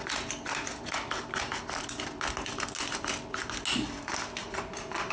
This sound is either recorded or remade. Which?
recorded